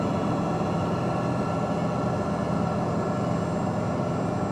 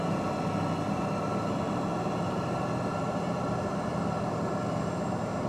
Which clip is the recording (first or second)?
first